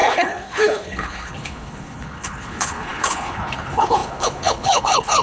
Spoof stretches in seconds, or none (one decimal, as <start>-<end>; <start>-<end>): 0.0-5.2

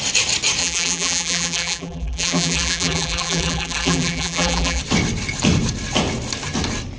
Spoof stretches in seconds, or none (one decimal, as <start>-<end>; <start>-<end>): 0.6-4.8

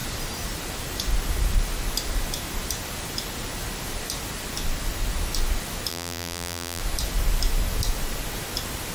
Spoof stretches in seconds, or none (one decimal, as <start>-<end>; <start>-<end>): 5.9-6.8

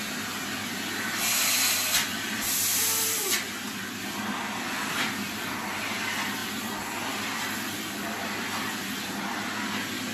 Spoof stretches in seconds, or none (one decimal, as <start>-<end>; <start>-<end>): 2.1-3.3; 6.4-8.2